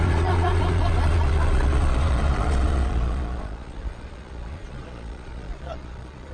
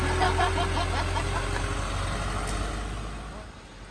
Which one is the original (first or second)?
second